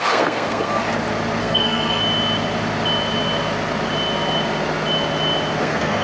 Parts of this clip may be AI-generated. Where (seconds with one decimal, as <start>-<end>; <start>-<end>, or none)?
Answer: 0.0-0.8; 1.4-2.0; 5.6-6.0